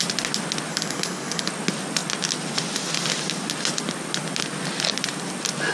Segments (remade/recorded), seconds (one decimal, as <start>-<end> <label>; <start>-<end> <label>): 0.0-0.7 recorded; 0.7-1.5 remade; 1.5-5.7 recorded